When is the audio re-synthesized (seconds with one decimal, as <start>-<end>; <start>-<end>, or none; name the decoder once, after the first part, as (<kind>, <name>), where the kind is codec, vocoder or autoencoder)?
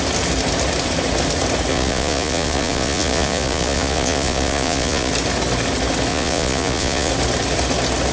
1.7-5.1 (vocoder, Vocos); 6.1-7.1